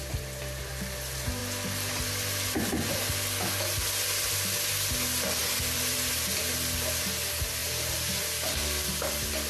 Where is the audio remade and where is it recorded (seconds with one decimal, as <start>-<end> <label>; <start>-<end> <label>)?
0.0-5.4 recorded; 5.4-6.5 remade; 6.5-7.6 recorded; 7.6-8.1 remade; 8.1-9.5 recorded